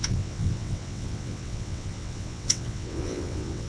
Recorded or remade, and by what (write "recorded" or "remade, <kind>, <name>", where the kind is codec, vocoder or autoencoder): remade, vocoder, WaveNeXt